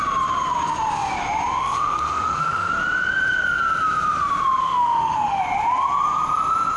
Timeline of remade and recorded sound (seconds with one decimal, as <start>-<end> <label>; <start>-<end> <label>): 0.0-1.6 recorded; 1.6-2.7 remade; 2.7-4.6 recorded; 4.6-5.4 remade; 5.4-6.8 recorded